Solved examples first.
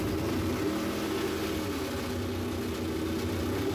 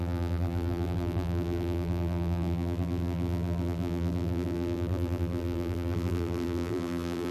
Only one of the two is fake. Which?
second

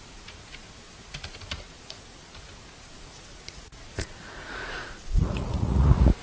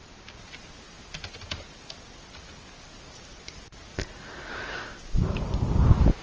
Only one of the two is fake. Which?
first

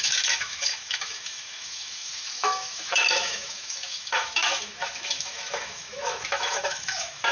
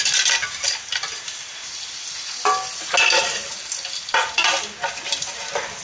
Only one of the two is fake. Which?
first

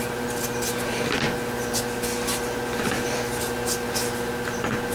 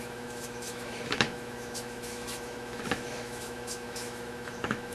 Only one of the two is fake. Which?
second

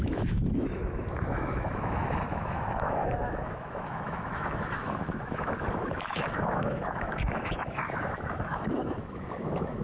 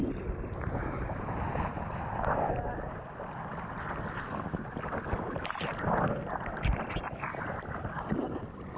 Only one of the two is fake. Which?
first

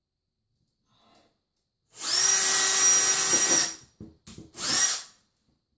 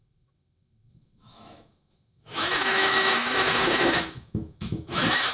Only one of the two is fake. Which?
second